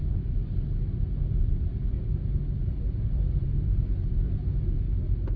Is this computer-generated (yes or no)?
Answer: no